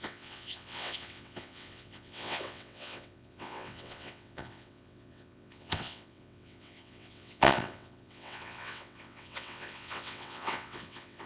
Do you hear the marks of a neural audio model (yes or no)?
yes